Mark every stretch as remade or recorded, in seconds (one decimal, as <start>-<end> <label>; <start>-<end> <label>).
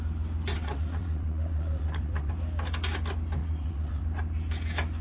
0.0-0.5 recorded; 0.5-2.3 remade; 2.3-3.4 recorded; 3.4-4.0 remade; 4.0-5.0 recorded